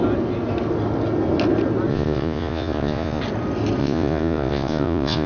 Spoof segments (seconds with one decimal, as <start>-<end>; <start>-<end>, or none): 1.9-3.2; 3.8-5.3